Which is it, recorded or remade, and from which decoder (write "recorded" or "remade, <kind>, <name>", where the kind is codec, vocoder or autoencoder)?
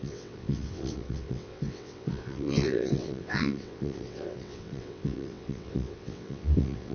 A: remade, vocoder, WaveNeXt